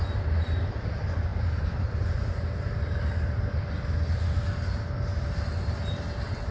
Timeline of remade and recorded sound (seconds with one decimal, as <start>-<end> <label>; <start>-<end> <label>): 0.0-6.5 recorded